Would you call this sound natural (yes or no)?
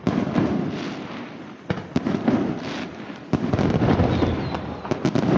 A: yes